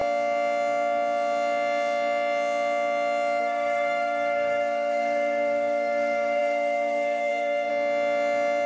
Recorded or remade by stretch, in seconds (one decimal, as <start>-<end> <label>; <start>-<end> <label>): 0.0-3.4 recorded; 3.4-7.7 remade; 7.7-8.7 recorded